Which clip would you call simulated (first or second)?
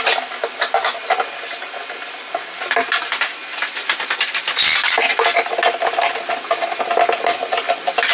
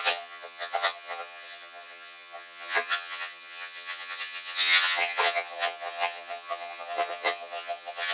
second